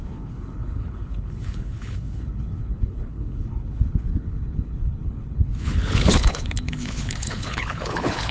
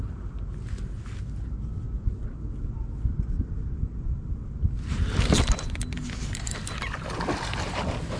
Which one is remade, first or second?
first